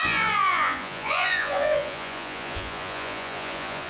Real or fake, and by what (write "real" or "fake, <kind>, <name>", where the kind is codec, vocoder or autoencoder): fake, vocoder, Vocos